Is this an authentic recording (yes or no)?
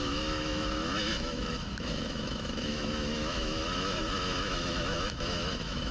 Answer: no